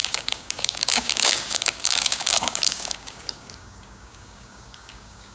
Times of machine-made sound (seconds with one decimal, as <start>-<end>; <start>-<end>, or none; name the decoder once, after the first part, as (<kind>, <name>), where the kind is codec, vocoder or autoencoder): 0.0-5.3 (codec, DAC)